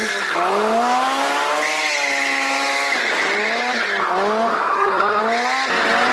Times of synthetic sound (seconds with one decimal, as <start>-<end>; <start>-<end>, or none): 4.5-5.2